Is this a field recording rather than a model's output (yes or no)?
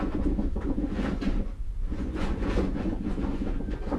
no